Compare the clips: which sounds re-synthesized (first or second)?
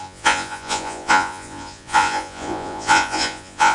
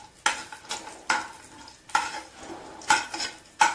first